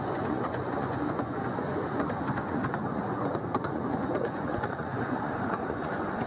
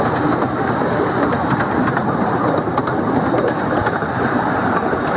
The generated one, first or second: first